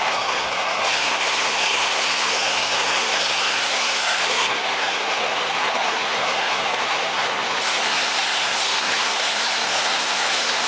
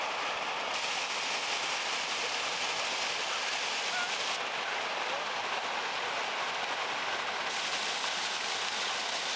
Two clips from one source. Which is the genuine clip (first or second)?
second